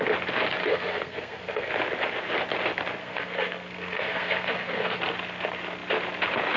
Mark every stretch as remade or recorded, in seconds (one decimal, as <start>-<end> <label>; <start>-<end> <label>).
0.0-0.6 recorded; 0.6-1.7 remade; 1.7-3.0 recorded; 3.0-5.0 remade; 5.0-6.6 recorded